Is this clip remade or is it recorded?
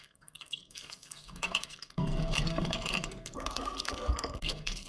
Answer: remade